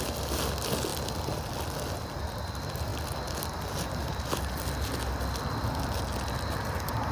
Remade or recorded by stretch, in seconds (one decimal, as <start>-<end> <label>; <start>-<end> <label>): 0.0-7.1 recorded